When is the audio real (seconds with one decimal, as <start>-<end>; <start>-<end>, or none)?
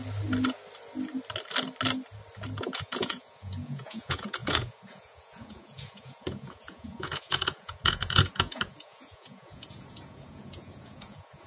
0.0-2.6